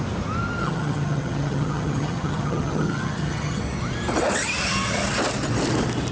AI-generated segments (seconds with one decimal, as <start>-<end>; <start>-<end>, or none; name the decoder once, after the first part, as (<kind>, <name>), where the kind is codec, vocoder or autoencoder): 0.6-3.6 (vocoder, HiFi-GAN)